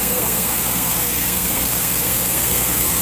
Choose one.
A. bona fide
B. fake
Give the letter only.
B